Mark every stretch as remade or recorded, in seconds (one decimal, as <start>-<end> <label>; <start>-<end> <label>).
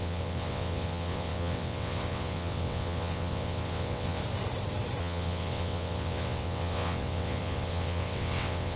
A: 0.0-4.2 remade; 4.2-5.0 recorded; 5.0-8.8 remade